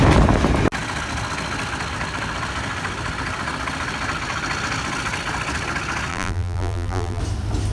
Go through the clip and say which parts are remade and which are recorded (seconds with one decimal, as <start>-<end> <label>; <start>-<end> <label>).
0.0-6.1 recorded; 6.1-7.2 remade; 7.2-7.7 recorded

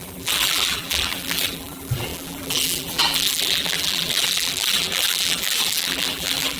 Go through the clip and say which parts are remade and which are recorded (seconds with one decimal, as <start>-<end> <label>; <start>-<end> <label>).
0.0-6.6 remade

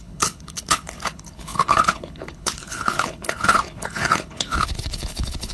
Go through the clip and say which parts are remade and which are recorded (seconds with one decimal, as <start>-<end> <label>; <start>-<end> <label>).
0.0-5.5 remade

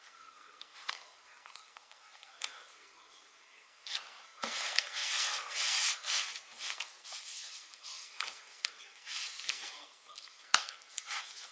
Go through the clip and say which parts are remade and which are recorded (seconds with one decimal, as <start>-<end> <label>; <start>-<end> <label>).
0.0-11.5 remade

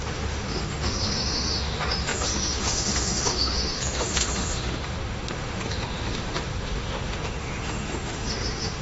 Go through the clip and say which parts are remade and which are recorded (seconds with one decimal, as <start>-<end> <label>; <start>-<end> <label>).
0.0-8.8 remade

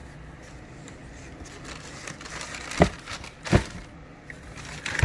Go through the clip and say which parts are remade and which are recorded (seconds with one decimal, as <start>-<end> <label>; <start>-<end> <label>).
0.0-5.0 remade